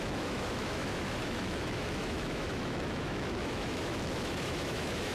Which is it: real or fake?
fake